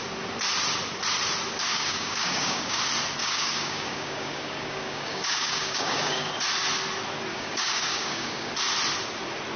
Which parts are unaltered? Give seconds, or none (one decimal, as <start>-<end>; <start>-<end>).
0.0-1.6; 2.8-3.2; 6.3-7.3; 8.5-9.6